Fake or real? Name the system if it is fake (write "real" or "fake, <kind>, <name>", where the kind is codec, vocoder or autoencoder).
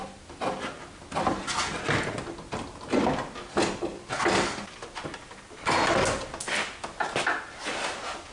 real